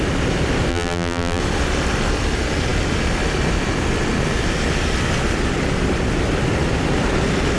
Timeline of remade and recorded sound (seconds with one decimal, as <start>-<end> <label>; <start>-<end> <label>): 0.0-0.7 recorded; 0.7-1.4 remade; 1.4-7.6 recorded